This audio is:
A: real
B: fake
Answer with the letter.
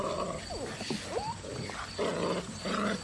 A